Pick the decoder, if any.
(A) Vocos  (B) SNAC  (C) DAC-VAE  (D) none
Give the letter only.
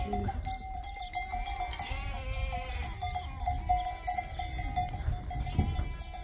D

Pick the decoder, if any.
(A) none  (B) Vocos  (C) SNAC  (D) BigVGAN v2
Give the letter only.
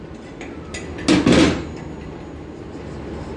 A